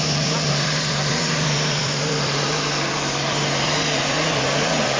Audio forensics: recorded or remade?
remade